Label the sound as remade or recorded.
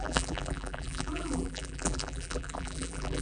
remade